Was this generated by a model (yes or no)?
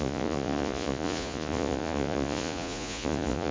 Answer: yes